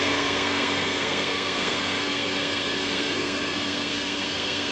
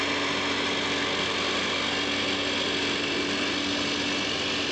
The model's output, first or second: first